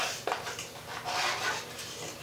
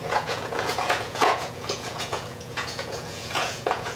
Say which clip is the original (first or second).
first